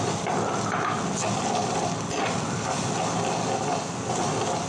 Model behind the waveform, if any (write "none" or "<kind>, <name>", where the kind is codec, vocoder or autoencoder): none